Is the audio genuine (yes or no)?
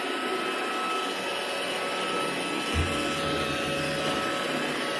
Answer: yes